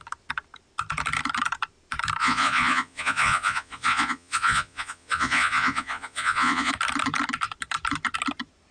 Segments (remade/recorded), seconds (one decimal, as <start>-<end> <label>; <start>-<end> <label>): 0.0-2.2 recorded; 2.2-6.7 remade; 6.7-8.7 recorded